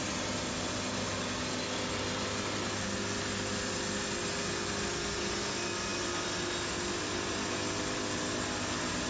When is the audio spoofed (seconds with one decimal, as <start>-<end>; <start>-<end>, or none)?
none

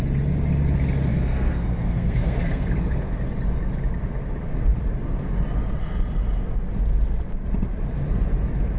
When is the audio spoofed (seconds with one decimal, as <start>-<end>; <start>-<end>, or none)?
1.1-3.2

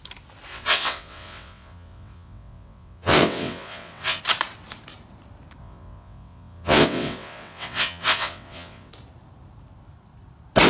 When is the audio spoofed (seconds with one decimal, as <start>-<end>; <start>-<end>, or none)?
0.5-4.2; 5.6-8.9

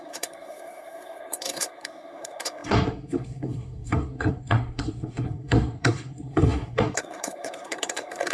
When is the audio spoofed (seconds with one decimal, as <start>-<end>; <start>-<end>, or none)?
0.0-8.3

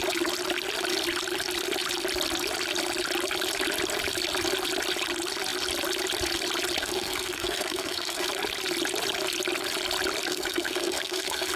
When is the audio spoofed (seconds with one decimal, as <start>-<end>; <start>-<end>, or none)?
6.8-8.3; 10.3-11.6